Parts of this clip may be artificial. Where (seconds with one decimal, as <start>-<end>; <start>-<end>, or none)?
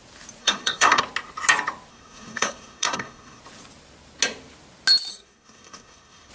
0.4-1.0; 1.9-3.4; 5.1-6.3